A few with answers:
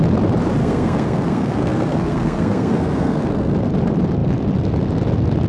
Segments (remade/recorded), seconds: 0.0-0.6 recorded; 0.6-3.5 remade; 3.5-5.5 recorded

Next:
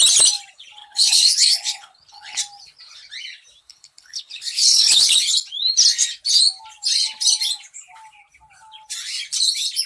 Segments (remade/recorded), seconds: 0.0-0.8 recorded; 0.8-2.4 remade; 2.4-3.6 recorded; 3.6-5.2 remade; 5.2-9.9 recorded